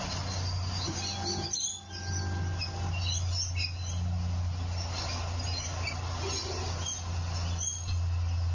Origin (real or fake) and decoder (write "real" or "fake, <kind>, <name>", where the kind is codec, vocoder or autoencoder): real